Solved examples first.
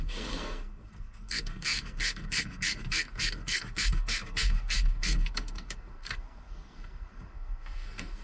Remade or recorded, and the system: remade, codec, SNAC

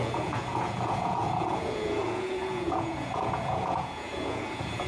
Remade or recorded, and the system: remade, vocoder, Vocos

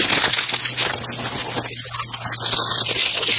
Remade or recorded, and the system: recorded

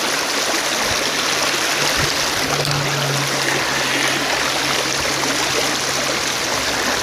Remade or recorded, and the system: recorded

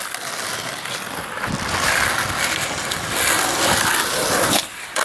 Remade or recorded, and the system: recorded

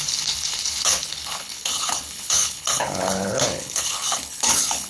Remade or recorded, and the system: remade, codec, HILCodec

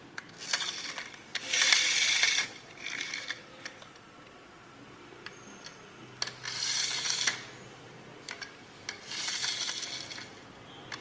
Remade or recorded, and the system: recorded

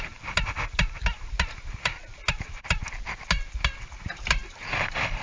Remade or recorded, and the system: recorded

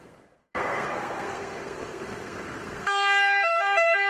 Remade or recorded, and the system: remade, codec, SNAC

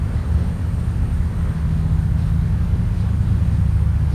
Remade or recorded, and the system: remade, codec, DAC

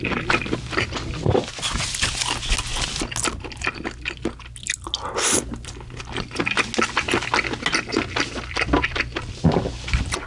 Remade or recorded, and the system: recorded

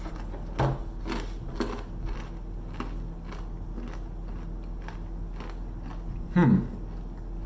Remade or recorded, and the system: recorded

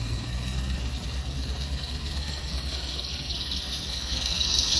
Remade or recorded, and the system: remade, codec, SNAC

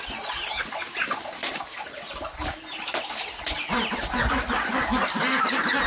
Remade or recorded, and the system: recorded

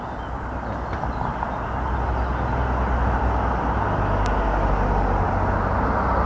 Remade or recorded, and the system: recorded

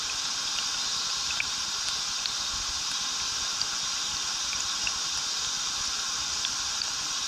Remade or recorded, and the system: recorded